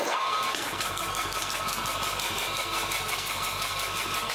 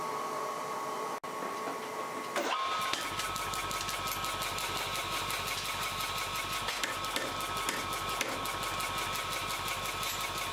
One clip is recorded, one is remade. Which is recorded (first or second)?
second